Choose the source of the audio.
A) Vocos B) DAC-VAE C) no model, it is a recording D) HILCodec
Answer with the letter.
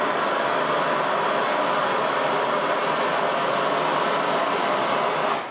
C